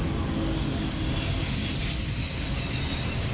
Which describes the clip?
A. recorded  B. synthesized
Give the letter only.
A